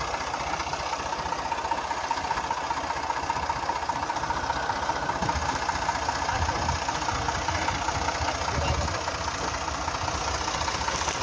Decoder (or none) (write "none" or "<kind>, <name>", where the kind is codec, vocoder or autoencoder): none